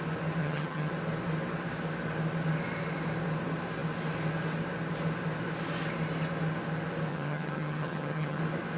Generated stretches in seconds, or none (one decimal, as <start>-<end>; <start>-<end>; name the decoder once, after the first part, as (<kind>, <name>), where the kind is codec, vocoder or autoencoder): 0.4-0.9 (vocoder, HiFi-GAN); 7.1-8.4